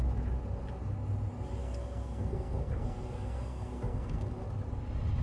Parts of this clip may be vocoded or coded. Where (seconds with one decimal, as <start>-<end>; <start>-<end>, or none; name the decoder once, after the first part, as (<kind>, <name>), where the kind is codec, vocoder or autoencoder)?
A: 1.6-4.3 (codec, SNAC)